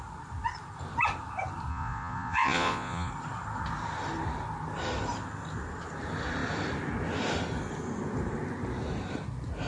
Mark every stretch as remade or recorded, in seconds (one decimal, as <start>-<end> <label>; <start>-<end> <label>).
0.0-1.7 recorded; 1.7-3.1 remade; 3.1-9.7 recorded